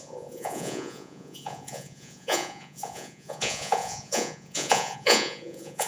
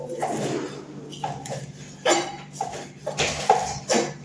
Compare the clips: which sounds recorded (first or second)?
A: second